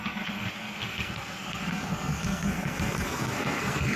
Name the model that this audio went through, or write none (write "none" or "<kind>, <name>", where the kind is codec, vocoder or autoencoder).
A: codec, SNAC